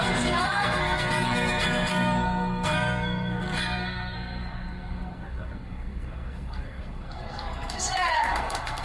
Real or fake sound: fake